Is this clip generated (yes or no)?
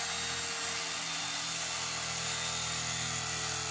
no